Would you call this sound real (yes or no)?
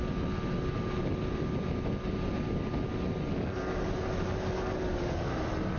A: yes